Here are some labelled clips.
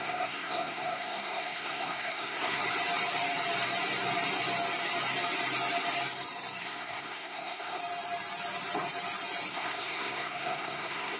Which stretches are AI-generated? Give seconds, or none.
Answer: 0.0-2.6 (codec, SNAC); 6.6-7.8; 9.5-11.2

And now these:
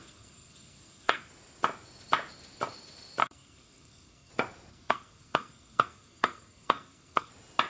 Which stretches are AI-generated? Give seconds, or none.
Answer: 0.0-1.3 (codec, SNAC); 3.2-4.3; 4.7-7.3

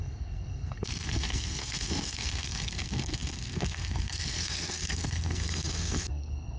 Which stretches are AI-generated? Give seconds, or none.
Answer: 0.0-6.6 (codec, SNAC)

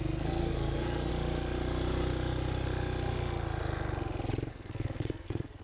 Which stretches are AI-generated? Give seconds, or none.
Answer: 0.0-1.1 (codec, SNAC); 4.5-5.6

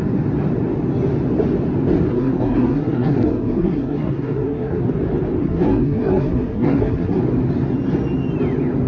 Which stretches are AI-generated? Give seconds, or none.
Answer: 2.1-4.8 (codec, SNAC); 5.4-7.2